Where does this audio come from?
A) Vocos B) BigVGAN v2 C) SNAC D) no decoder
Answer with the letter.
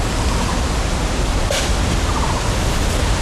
D